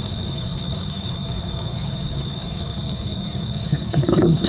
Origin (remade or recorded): remade